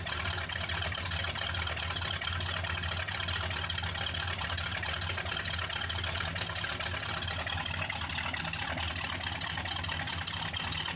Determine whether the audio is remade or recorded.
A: recorded